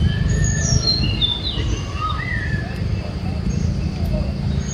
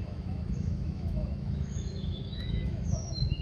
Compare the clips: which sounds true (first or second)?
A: first